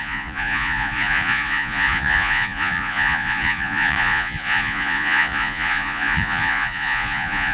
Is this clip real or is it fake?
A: fake